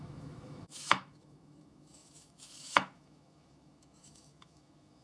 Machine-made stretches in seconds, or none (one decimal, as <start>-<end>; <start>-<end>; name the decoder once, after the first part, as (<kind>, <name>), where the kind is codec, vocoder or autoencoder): 0.0-5.0 (autoencoder, DAC-VAE)